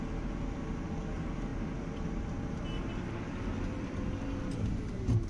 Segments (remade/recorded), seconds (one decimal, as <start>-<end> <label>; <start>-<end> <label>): 0.0-1.5 recorded; 1.5-4.2 remade; 4.2-5.3 recorded